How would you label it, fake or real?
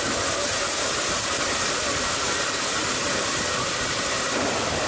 real